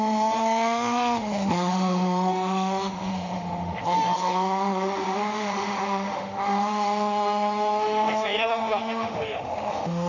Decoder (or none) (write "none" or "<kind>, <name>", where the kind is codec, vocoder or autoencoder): autoencoder, DAC-VAE